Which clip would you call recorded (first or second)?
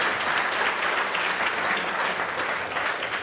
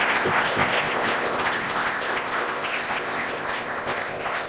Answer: first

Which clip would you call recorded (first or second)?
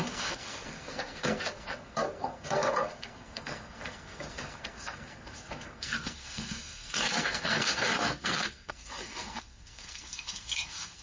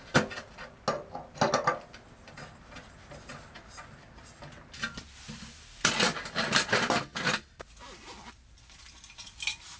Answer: second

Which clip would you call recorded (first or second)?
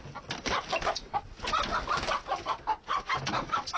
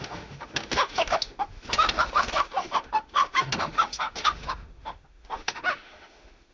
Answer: first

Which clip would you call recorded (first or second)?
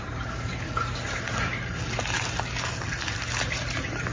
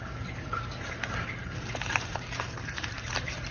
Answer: first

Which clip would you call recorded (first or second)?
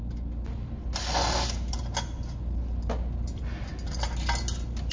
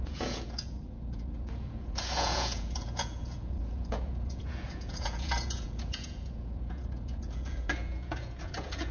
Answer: first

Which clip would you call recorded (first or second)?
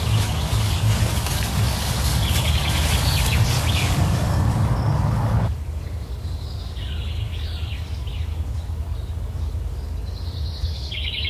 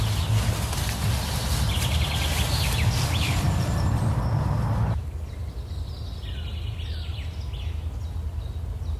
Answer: second